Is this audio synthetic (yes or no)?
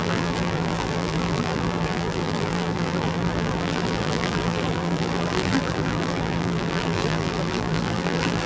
yes